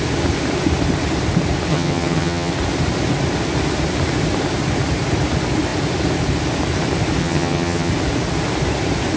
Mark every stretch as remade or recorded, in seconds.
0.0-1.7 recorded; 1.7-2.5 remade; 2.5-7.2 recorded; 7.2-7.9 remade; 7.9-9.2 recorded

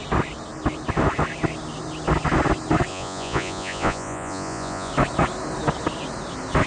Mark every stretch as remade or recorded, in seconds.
0.0-2.9 recorded; 2.9-4.9 remade; 4.9-6.7 recorded

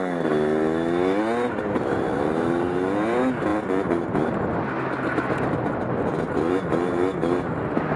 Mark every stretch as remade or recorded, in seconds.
0.0-8.0 recorded

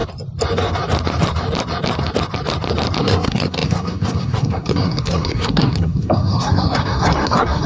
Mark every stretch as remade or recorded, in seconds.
0.0-3.0 recorded; 3.0-7.7 remade

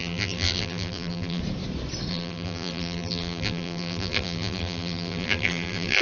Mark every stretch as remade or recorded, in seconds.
0.0-1.4 remade; 1.4-2.1 recorded; 2.1-6.0 remade

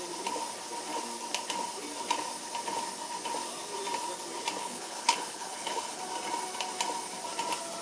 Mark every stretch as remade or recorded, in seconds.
0.0-4.6 recorded; 4.6-6.0 remade; 6.0-7.8 recorded

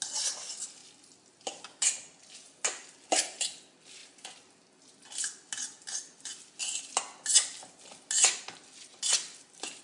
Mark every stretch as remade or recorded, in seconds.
0.0-9.8 recorded